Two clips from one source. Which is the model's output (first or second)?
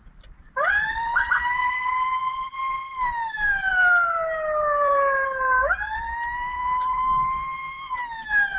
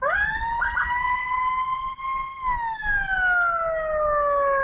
first